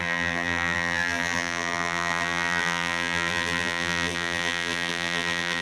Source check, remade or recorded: remade